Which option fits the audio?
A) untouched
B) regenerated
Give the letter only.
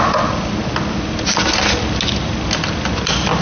A